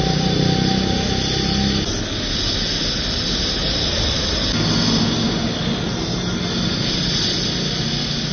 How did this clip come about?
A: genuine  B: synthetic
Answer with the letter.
A